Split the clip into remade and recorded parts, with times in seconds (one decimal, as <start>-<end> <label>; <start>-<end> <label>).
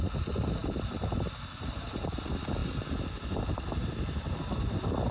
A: 0.0-5.1 recorded